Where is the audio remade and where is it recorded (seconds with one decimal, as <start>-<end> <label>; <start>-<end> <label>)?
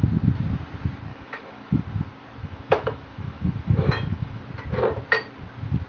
0.0-1.1 recorded; 1.1-1.8 remade; 1.8-2.4 recorded; 2.4-4.4 remade; 4.4-5.9 recorded